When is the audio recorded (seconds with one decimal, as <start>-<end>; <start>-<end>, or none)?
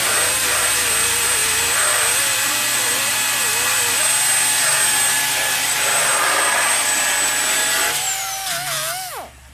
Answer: 0.0-9.5